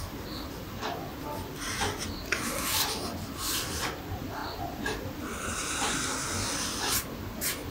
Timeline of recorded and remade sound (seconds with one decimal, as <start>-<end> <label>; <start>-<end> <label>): 0.0-7.7 recorded